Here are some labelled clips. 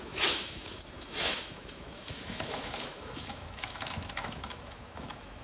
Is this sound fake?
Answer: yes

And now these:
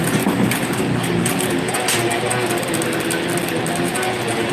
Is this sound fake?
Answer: no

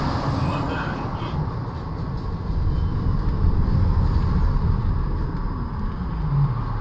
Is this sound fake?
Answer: no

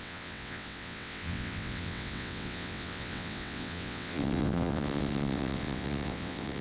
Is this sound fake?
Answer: yes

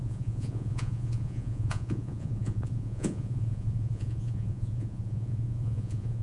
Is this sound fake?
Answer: yes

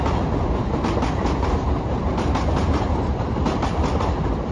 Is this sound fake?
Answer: no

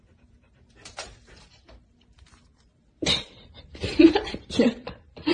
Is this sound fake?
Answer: yes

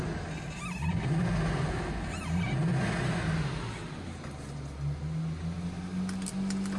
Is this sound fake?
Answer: no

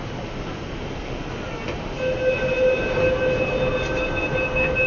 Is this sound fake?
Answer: no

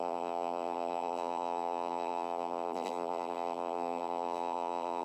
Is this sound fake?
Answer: yes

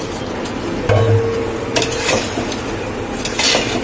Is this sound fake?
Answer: no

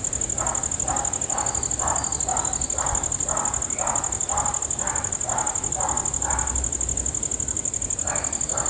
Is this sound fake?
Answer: no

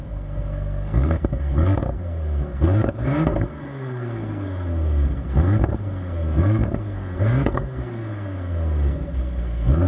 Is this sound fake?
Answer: yes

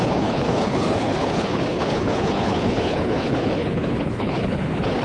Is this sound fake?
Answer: yes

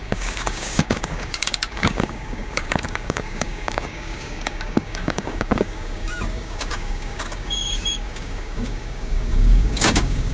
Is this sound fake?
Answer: yes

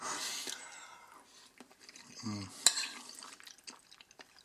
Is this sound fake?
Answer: no